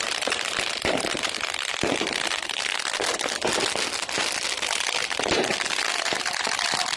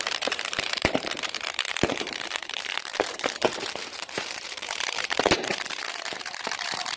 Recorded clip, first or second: first